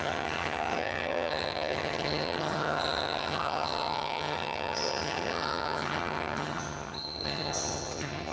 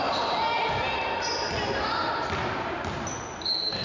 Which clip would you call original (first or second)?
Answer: second